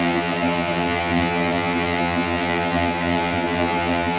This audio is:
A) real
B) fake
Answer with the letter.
B